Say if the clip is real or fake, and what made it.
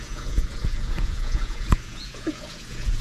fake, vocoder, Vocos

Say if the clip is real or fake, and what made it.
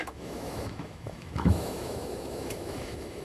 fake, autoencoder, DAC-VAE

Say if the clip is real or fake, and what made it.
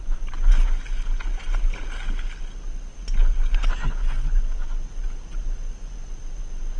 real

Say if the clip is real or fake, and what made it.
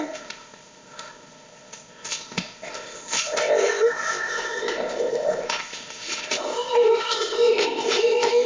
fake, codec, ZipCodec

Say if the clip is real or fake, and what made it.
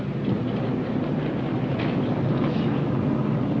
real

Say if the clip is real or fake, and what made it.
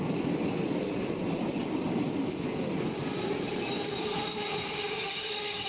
real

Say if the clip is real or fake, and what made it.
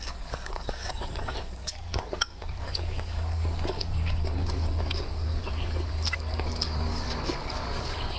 fake, codec, DAC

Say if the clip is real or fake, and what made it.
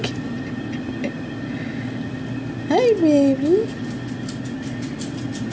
real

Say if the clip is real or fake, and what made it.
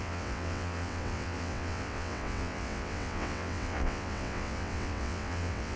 fake, vocoder, WaveNeXt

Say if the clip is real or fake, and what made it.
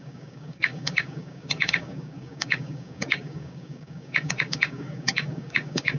fake, codec, DAC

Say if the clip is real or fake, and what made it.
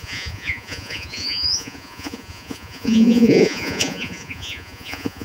fake, vocoder, Vocos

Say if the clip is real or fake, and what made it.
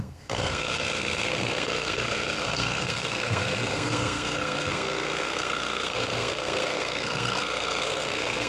fake, codec, SNAC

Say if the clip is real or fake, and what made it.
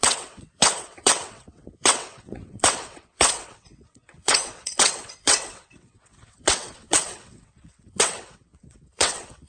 fake, vocoder, WaveNeXt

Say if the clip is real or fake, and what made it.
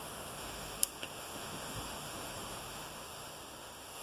fake, autoencoder, DAC-VAE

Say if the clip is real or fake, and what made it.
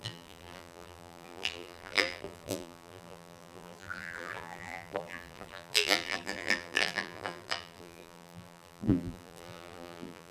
fake, vocoder, BigVGAN v2